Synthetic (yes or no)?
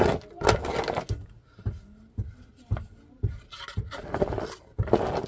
no